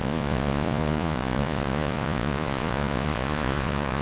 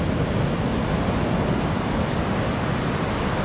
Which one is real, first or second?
second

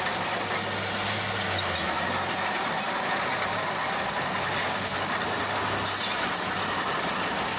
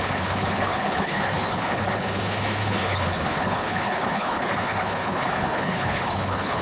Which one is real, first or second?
first